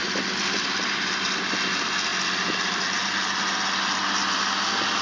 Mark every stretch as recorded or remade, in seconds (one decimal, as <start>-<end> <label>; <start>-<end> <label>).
0.0-5.0 recorded